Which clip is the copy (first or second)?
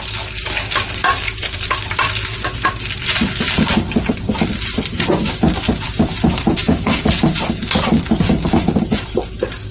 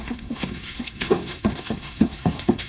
second